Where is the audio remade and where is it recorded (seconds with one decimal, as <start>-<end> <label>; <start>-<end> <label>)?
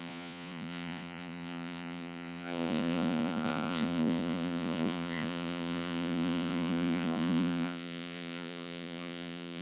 0.0-9.6 remade